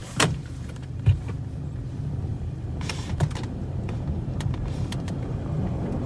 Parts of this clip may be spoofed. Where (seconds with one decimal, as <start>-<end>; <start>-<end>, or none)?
0.0-1.2; 2.3-6.1